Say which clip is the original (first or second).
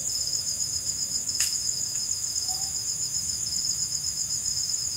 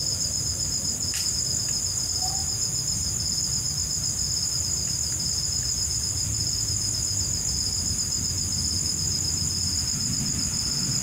second